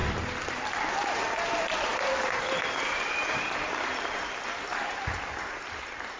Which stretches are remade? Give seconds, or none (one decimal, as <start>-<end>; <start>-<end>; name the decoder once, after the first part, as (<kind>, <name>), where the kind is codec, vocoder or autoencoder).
0.0-1.9 (vocoder, BigVGAN v2); 2.9-6.2